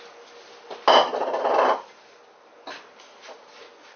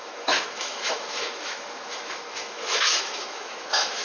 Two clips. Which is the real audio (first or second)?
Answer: first